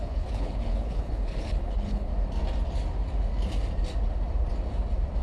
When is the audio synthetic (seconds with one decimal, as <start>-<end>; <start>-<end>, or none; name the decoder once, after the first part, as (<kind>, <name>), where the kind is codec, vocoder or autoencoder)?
0.0-2.1 (codec, HILCodec)